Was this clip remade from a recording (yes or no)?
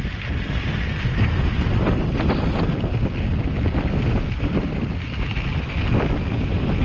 no